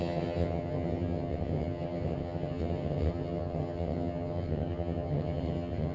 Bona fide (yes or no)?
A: no